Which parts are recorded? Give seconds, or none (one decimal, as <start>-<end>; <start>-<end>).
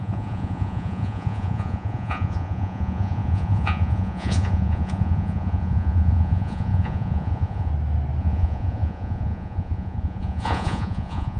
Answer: 7.7-8.2